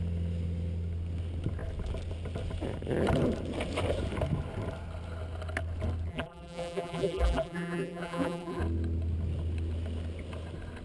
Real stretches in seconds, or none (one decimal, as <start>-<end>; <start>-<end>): 0.0-6.1; 8.6-10.8